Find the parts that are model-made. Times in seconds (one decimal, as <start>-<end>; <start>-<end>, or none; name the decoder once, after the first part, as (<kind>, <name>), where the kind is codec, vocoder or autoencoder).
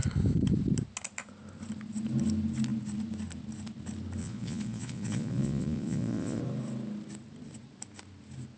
4.2-6.4 (vocoder, Vocos)